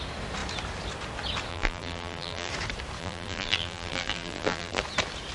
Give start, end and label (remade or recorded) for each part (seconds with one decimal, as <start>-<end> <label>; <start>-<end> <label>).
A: 0.0-1.5 recorded; 1.5-2.5 remade; 2.5-3.0 recorded; 3.0-4.8 remade; 4.8-5.3 recorded

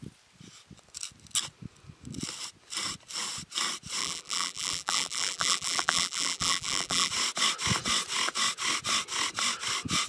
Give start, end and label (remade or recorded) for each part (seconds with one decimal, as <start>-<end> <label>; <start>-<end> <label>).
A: 0.0-4.0 recorded; 4.0-7.1 remade; 7.1-10.1 recorded

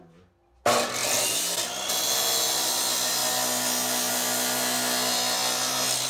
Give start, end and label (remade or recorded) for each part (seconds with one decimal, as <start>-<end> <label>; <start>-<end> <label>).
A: 0.0-6.1 recorded

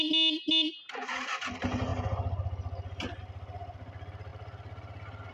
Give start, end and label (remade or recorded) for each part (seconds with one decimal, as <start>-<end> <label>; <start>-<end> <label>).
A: 0.0-5.3 recorded

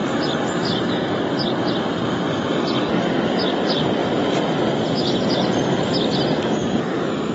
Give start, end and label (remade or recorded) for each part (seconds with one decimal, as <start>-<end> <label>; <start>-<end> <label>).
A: 0.0-0.8 remade; 0.8-4.0 recorded; 4.0-6.2 remade; 6.2-7.3 recorded

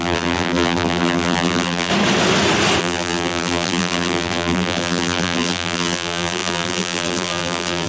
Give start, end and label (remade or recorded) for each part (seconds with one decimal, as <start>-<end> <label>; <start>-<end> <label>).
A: 0.0-1.9 remade; 1.9-2.8 recorded; 2.8-7.9 remade